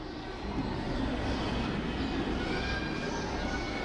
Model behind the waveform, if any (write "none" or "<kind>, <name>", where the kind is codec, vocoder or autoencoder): none